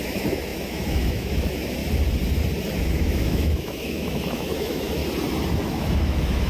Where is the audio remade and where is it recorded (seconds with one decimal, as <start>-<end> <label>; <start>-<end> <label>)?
0.0-1.8 remade; 1.8-2.8 recorded; 2.8-5.0 remade; 5.0-5.7 recorded; 5.7-6.5 remade

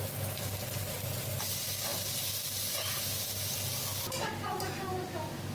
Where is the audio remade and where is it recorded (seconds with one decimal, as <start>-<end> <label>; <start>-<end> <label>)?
0.0-5.5 recorded

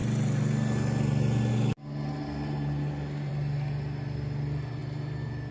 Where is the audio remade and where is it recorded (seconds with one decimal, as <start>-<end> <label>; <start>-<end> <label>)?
0.0-5.5 recorded

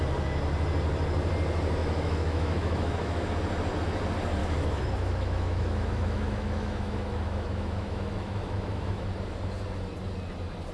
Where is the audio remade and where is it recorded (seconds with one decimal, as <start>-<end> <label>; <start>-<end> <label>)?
0.0-1.8 recorded; 1.8-3.3 remade; 3.3-4.4 recorded; 4.4-9.1 remade; 9.1-10.7 recorded

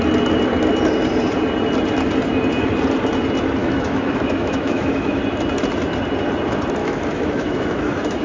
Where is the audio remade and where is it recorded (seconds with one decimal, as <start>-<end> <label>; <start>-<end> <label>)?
0.0-3.6 recorded; 3.6-5.2 remade; 5.2-6.8 recorded; 6.8-8.2 remade

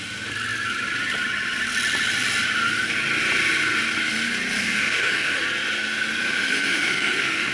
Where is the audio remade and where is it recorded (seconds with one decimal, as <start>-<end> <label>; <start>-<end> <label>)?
0.0-4.6 recorded; 4.6-5.4 remade; 5.4-6.3 recorded; 6.3-7.5 remade